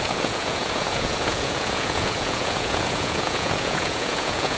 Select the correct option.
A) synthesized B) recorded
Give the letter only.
A